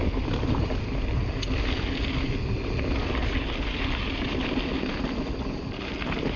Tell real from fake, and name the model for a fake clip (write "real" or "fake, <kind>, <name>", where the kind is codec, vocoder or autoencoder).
real